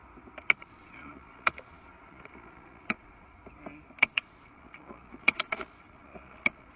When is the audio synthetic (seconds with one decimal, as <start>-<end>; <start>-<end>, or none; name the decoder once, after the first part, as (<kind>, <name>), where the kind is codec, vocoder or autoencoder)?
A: 0.6-3.4 (vocoder, Vocos); 4.0-6.8